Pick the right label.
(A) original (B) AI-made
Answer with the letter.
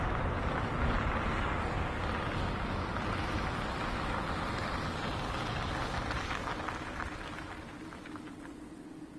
A